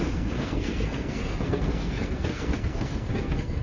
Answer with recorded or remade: remade